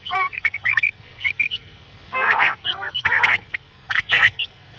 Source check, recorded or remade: remade